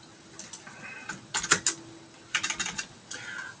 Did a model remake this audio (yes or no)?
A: no